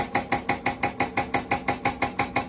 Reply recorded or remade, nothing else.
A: recorded